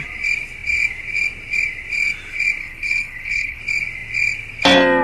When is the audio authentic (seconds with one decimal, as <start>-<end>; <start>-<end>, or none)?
0.0-2.6; 3.6-5.0